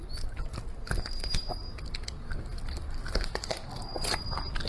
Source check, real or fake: real